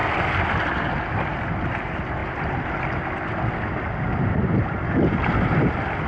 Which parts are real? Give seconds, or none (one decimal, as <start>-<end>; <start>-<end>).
0.0-6.1

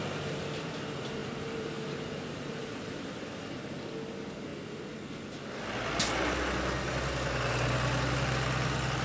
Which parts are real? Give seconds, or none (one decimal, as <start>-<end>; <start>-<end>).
0.0-1.2; 3.0-9.0

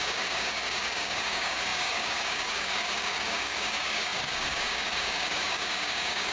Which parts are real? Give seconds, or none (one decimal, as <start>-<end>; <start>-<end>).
none

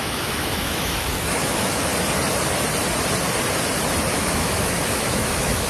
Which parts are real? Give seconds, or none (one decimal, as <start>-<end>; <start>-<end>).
1.9-4.1